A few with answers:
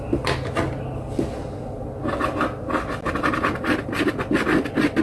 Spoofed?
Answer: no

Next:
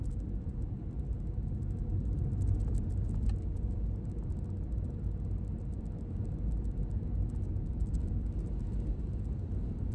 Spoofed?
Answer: no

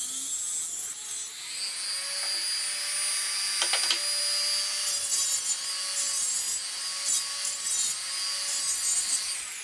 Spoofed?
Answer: no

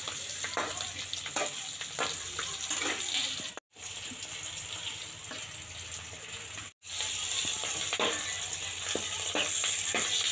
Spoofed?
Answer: no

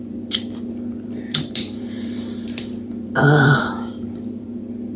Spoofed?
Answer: yes